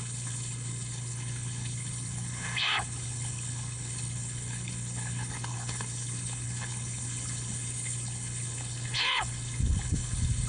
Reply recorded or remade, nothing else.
remade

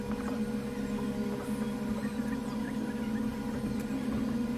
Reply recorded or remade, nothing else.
recorded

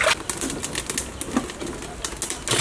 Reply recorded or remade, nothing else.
recorded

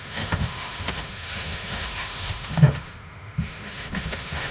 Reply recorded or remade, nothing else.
remade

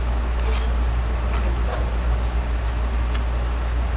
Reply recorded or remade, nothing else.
recorded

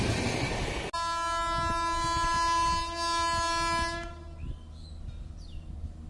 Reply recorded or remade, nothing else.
recorded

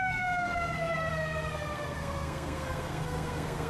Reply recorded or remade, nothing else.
remade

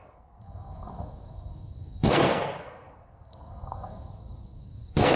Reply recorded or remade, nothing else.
remade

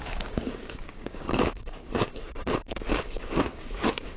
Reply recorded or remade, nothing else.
remade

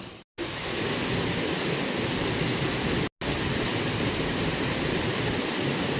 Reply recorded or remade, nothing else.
recorded